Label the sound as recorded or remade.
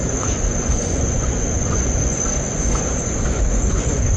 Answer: remade